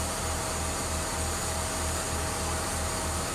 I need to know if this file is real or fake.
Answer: real